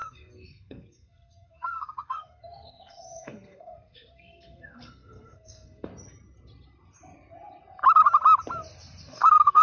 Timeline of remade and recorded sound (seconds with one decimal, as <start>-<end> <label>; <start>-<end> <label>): 0.0-5.9 remade; 5.9-9.0 recorded; 9.0-9.6 remade